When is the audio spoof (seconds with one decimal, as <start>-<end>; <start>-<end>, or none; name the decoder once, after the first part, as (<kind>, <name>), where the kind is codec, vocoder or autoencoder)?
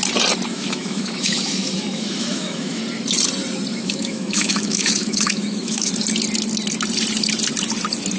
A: 0.5-2.8 (autoencoder, DAC-VAE); 3.7-5.9